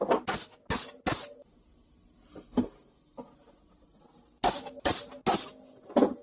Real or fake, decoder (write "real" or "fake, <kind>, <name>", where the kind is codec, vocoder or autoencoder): real